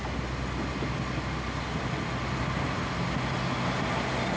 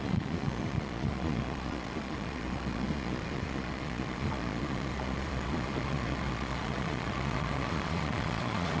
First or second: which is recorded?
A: first